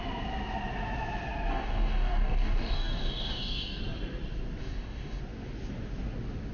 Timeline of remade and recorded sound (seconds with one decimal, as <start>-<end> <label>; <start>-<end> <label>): 0.0-1.5 recorded; 1.5-3.8 remade; 3.8-4.6 recorded; 4.6-5.2 remade; 5.2-6.5 recorded

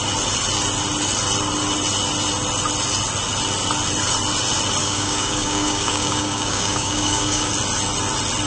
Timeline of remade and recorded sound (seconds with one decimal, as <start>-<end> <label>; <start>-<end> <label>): 0.0-4.8 recorded; 4.8-7.5 remade; 7.5-8.5 recorded

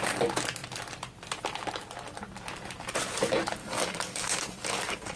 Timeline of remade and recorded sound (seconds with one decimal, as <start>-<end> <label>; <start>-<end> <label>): 0.0-3.6 recorded; 3.6-5.2 remade

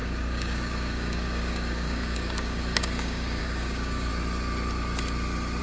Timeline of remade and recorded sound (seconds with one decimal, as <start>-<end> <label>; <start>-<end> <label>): 0.0-4.1 remade; 4.1-5.6 recorded

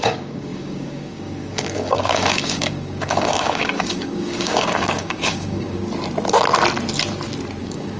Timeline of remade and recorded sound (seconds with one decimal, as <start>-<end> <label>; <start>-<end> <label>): 0.0-5.8 remade; 5.8-7.6 recorded; 7.6-8.0 remade

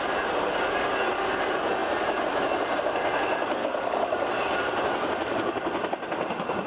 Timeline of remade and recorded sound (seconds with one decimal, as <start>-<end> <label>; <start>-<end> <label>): 0.0-3.6 recorded; 3.6-4.3 remade; 4.3-6.7 recorded

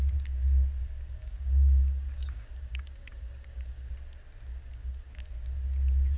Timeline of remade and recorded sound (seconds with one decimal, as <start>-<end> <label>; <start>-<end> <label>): 0.0-0.8 recorded; 0.8-3.9 remade; 3.9-4.6 recorded; 4.6-5.3 remade; 5.3-6.2 recorded

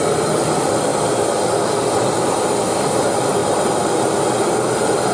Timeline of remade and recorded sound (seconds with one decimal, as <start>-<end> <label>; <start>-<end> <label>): 0.0-5.1 recorded